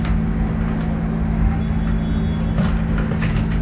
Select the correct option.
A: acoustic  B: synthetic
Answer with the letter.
A